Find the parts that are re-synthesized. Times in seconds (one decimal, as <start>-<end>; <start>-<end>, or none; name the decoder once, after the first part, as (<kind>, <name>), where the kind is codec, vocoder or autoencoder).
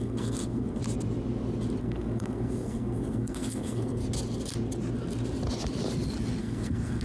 0.0-0.8 (codec, SNAC); 1.8-4.0; 6.4-7.0